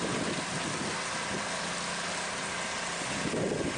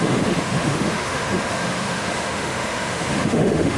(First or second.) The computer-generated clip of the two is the second